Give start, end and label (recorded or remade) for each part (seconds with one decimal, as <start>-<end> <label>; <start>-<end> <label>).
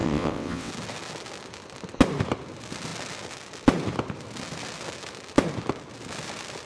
0.0-0.7 remade; 0.7-6.7 recorded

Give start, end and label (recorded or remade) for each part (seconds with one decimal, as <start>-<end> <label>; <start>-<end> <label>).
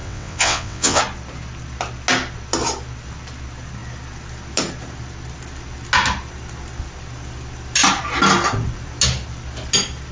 0.0-1.0 remade; 1.0-10.1 recorded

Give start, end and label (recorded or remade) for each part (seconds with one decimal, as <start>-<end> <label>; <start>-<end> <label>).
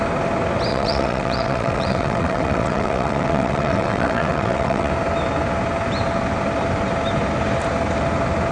0.0-0.7 recorded; 0.7-4.9 remade; 4.9-8.5 recorded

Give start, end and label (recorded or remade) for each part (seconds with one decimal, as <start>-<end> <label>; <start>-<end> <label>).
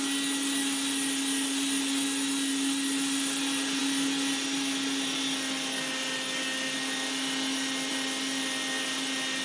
0.0-9.4 recorded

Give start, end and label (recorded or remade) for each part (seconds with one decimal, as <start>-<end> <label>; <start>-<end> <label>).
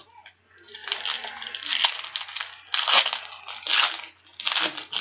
0.0-5.0 recorded